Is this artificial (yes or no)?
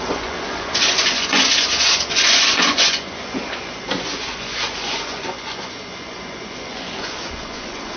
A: yes